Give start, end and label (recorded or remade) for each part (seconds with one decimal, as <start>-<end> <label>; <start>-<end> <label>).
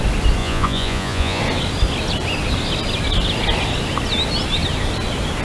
0.0-0.4 recorded; 0.4-1.4 remade; 1.4-5.4 recorded